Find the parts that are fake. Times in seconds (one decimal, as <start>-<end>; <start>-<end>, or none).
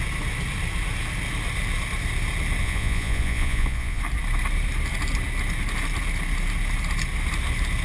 2.6-4.0